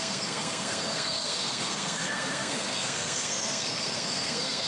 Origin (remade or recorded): remade